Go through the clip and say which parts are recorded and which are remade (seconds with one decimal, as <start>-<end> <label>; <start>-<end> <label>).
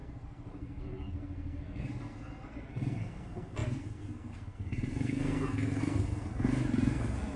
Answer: 0.0-7.4 remade